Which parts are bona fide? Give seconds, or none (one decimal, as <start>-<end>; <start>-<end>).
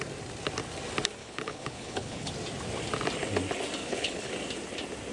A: 0.0-1.2; 2.3-3.8; 4.3-5.1